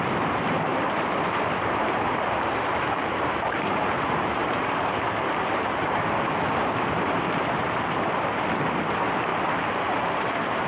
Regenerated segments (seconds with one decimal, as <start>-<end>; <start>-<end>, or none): 0.0-0.7; 1.5-10.7